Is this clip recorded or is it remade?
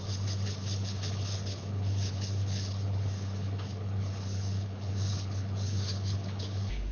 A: remade